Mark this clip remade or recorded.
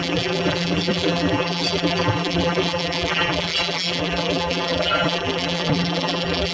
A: remade